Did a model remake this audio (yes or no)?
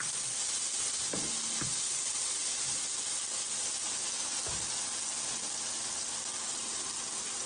no